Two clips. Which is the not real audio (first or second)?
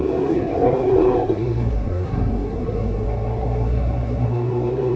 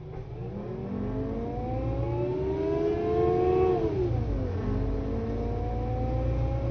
first